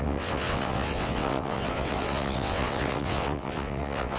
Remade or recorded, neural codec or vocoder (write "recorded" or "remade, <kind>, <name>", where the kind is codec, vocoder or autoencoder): remade, vocoder, WaveNeXt